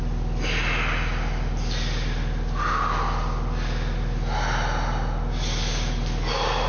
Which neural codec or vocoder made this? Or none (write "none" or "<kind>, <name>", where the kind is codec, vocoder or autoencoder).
none